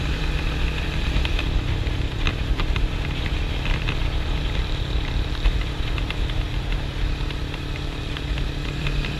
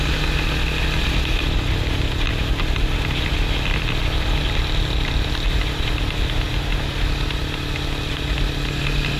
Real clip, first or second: second